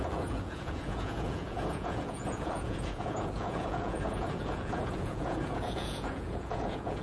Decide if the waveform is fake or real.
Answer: fake